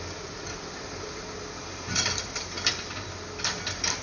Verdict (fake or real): real